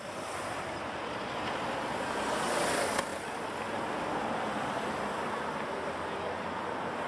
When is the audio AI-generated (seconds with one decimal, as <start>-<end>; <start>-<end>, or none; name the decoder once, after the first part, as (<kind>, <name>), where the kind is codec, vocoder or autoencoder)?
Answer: none